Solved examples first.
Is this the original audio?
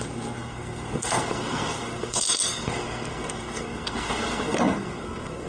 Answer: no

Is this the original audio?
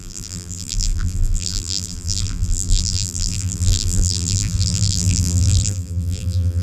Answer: no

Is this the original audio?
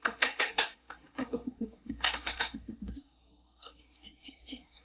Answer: no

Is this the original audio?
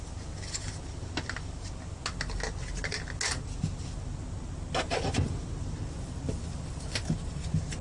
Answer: yes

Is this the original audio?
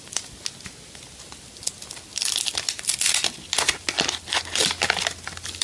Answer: yes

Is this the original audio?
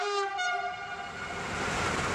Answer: no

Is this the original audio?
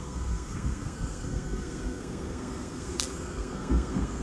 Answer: no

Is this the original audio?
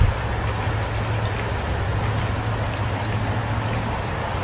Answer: yes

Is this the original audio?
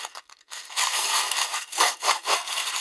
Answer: no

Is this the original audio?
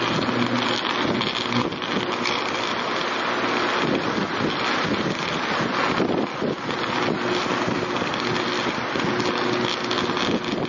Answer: yes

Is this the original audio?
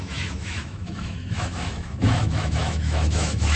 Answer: no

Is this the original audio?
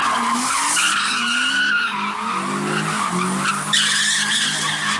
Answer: yes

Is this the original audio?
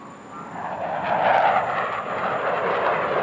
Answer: yes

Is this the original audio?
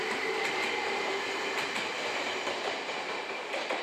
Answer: yes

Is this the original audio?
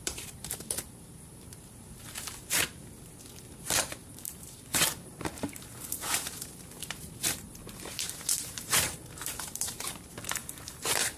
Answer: no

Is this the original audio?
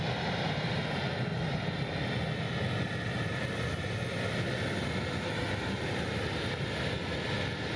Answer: yes